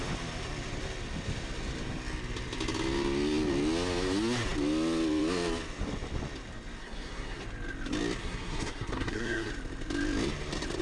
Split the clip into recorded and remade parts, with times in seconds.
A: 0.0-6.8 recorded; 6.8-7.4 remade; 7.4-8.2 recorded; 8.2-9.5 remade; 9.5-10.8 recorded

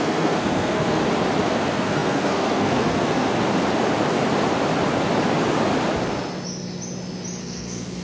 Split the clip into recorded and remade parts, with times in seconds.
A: 0.0-1.0 remade; 1.0-1.5 recorded; 1.5-3.3 remade; 3.3-7.4 recorded; 7.4-8.0 remade